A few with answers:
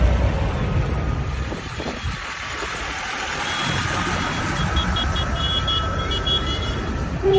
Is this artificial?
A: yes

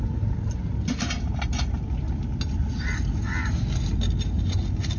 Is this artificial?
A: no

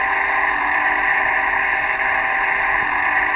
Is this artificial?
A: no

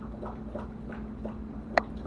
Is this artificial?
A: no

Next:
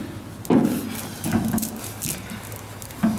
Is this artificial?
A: no